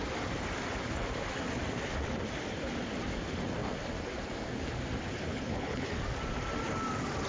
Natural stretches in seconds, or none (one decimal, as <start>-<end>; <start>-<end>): 0.0-5.3; 5.9-7.3